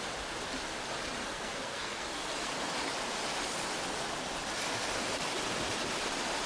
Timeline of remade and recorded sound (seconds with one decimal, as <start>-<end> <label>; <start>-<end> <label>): 0.0-1.2 recorded; 1.2-2.5 remade; 2.5-6.5 recorded